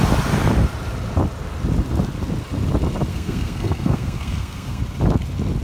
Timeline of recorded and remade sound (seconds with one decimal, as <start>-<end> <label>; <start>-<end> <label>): 0.0-3.1 recorded; 3.1-4.8 remade; 4.8-5.6 recorded